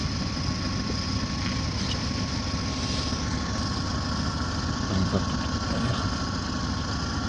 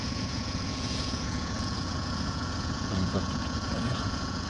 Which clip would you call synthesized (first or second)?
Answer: second